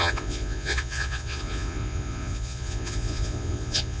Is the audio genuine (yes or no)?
no